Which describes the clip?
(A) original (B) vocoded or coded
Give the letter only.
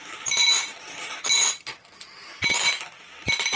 A